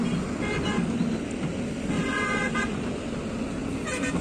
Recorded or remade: recorded